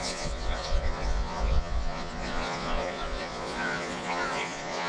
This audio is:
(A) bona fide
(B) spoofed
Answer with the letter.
B